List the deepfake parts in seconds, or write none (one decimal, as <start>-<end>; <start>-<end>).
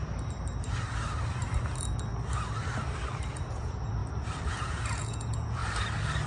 3.3-4.0; 4.5-5.6